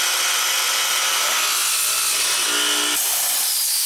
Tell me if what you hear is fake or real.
real